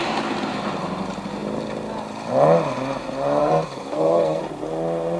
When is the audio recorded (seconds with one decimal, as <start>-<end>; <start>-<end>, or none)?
0.0-3.4; 4.4-5.2